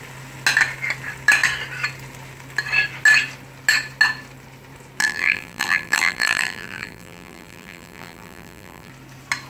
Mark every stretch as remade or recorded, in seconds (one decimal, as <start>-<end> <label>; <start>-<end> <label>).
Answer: 0.0-5.0 recorded; 5.0-8.9 remade; 8.9-9.5 recorded